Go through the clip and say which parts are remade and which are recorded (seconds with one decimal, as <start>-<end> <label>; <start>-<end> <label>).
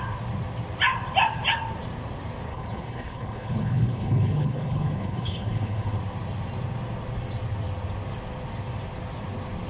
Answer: 0.0-2.5 recorded; 2.5-6.0 remade; 6.0-9.7 recorded